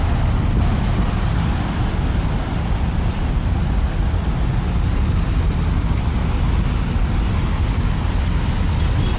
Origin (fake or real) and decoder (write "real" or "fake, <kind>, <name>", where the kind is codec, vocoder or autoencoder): real